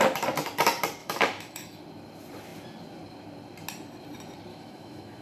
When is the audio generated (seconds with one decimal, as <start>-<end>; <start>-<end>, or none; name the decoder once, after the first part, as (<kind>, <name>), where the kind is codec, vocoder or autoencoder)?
1.0-1.8 (autoencoder, DAC-VAE); 4.5-5.2